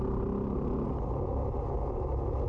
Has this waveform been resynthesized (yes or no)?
no